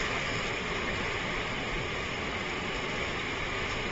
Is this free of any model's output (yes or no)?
yes